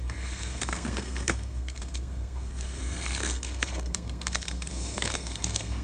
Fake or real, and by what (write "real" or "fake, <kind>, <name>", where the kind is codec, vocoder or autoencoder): fake, codec, SNAC